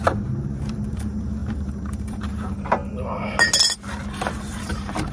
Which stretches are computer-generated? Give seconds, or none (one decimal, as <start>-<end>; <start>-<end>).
0.0-2.8; 4.1-5.1